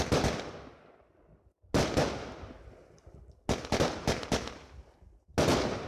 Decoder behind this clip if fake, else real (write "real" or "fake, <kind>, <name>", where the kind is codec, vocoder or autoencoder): real